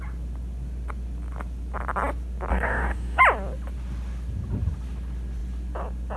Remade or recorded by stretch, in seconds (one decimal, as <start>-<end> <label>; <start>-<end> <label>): 0.0-2.5 recorded; 2.5-3.2 remade; 3.2-6.2 recorded